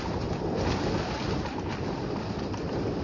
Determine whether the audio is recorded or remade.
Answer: recorded